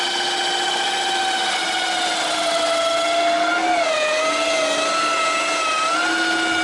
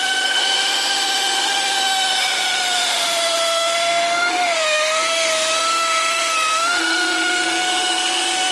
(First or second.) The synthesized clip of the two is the second